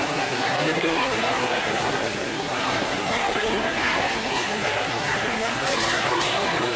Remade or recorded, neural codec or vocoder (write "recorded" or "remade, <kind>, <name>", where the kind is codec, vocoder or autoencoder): remade, codec, SNAC